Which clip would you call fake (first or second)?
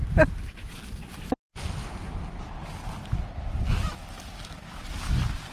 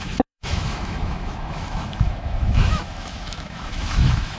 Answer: second